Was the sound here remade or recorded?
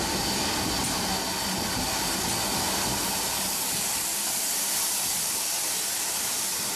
recorded